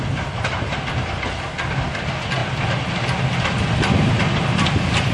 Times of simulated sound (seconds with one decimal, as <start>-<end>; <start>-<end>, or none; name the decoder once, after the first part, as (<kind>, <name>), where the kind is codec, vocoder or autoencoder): none